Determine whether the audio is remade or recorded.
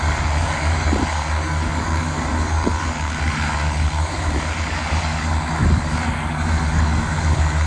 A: remade